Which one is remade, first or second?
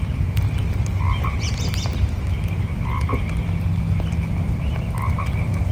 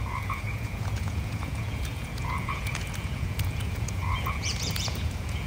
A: second